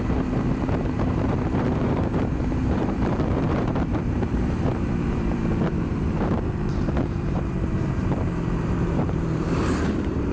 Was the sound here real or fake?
fake